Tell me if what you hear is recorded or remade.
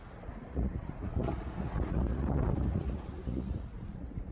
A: remade